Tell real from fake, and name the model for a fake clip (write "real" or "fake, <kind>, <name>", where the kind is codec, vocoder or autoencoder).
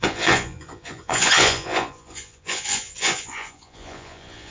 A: fake, vocoder, Vocos